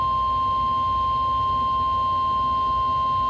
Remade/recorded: recorded